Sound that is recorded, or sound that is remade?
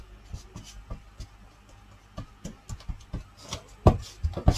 recorded